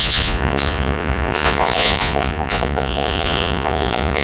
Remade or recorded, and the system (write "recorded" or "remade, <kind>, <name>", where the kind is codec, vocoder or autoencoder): remade, vocoder, Vocos